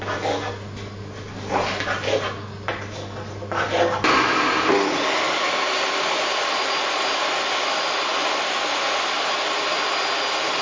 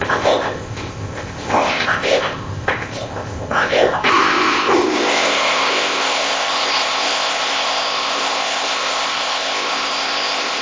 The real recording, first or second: first